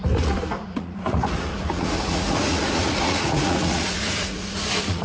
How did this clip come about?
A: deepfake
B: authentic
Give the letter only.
A